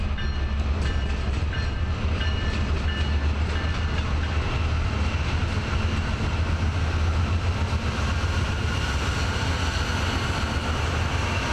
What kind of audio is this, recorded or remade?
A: recorded